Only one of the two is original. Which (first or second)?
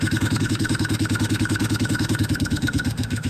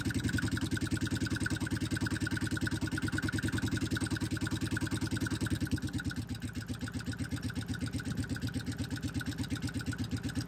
second